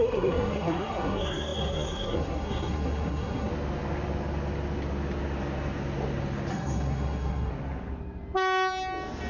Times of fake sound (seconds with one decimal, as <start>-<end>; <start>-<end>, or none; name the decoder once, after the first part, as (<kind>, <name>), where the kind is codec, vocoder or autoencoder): 0.0-3.5 (codec, SNAC); 6.5-7.5